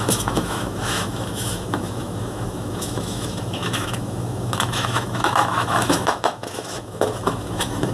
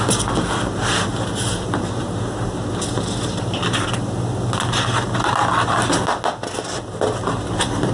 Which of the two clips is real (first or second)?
second